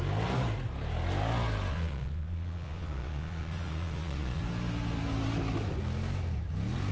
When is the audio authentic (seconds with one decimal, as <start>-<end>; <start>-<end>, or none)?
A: 0.0-1.7; 4.4-6.9